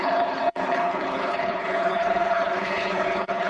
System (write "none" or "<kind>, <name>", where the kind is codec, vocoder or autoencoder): codec, HILCodec